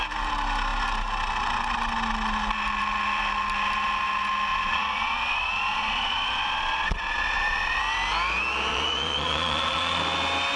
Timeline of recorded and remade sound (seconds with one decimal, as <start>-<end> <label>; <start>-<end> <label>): 0.0-4.5 recorded; 4.5-7.8 remade; 7.8-8.7 recorded; 8.7-10.0 remade; 10.0-10.6 recorded